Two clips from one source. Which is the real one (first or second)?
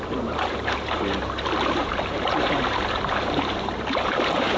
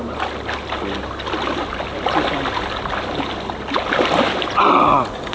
second